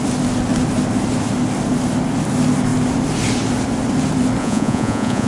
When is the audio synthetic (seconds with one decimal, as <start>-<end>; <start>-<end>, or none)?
4.4-5.3